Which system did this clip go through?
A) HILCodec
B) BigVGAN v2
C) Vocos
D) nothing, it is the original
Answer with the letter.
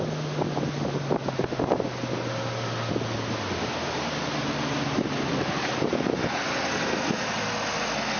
D